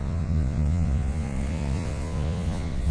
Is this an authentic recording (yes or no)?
no